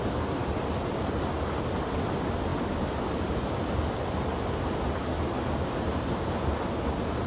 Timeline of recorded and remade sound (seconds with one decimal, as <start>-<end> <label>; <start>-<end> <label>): 0.0-7.3 recorded